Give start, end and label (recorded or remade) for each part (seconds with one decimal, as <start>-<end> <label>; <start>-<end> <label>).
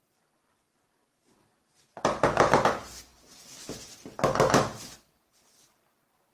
0.0-6.3 recorded